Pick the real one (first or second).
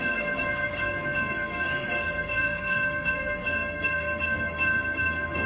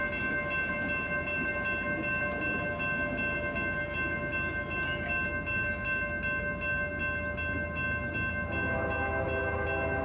second